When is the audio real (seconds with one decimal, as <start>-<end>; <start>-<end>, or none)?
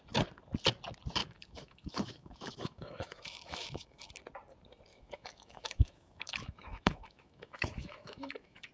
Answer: 0.0-1.2; 4.1-4.9